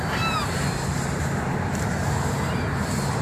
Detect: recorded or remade remade